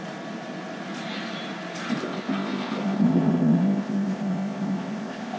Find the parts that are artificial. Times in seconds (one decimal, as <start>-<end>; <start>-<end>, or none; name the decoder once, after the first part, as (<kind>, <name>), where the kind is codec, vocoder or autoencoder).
2.0-5.4 (codec, ZipCodec)